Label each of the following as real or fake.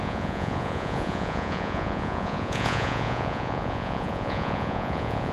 fake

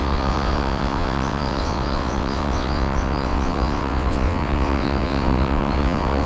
fake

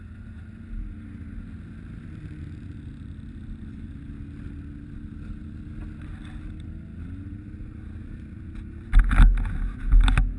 real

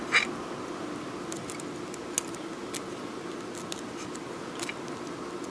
real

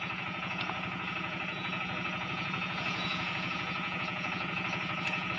fake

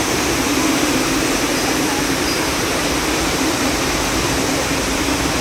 fake